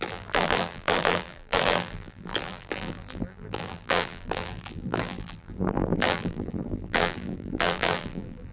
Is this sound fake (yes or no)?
yes